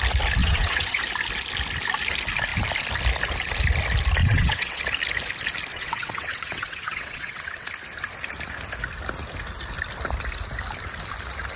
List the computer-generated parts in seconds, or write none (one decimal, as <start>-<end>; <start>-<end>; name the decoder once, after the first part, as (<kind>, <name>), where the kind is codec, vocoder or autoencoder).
0.4-1.0 (vocoder, WaveNeXt); 4.2-4.8; 5.7-7.7